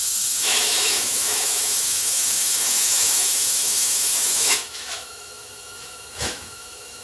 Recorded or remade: remade